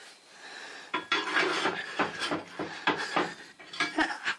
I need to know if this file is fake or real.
real